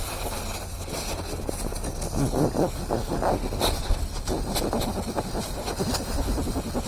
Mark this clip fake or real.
real